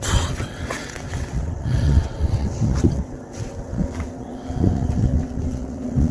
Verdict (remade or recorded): remade